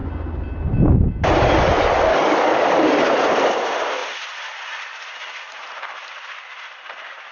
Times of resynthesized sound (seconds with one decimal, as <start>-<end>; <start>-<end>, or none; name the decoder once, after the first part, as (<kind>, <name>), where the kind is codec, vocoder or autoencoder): 2.1-2.9 (codec, DAC)